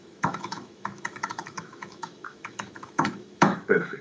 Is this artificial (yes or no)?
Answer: yes